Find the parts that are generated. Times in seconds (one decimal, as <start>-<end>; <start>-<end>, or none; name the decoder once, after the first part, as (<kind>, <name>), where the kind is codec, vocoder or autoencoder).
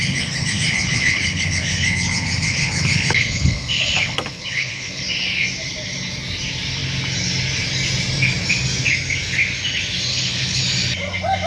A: 0.0-5.0 (codec, HILCodec); 10.1-10.6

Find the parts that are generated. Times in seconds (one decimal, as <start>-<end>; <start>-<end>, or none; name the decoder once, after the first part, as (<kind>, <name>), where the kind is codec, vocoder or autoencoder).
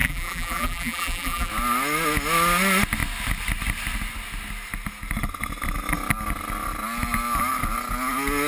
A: 0.0-1.5 (vocoder, BigVGAN v2)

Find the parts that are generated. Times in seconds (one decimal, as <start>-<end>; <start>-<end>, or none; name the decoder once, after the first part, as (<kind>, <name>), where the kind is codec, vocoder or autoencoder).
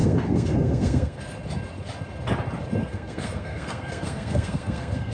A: 0.0-1.2 (codec, SNAC); 2.8-5.1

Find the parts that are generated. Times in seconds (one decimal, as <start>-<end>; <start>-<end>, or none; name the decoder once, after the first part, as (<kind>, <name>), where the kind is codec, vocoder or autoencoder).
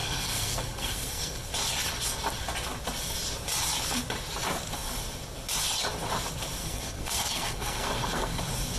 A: 0.0-1.5 (codec, SNAC); 6.6-8.4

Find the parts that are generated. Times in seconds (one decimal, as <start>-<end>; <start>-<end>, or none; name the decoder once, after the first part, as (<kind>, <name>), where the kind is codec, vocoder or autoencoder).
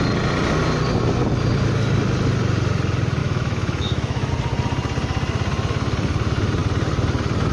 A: 3.2-4.3 (autoencoder, DAC-VAE)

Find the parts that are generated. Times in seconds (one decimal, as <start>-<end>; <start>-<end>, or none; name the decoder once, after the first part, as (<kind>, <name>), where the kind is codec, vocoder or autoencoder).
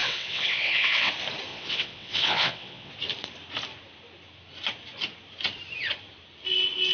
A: 0.0-1.1 (vocoder, WaveNeXt); 1.5-2.9